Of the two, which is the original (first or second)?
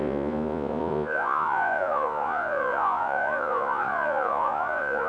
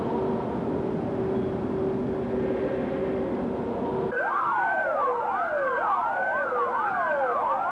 second